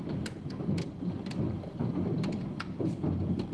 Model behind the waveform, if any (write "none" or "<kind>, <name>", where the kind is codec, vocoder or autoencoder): none